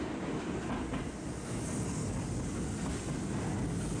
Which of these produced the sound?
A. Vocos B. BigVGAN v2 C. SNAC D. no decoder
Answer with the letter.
D